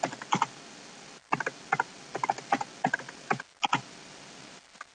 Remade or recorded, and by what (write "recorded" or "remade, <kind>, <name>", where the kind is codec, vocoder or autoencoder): recorded